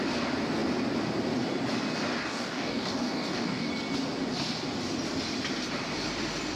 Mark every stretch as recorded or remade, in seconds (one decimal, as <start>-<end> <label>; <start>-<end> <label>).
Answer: 0.0-2.2 recorded; 2.2-3.7 remade; 3.7-6.6 recorded